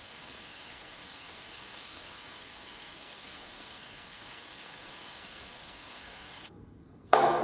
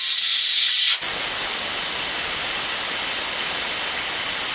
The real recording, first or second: second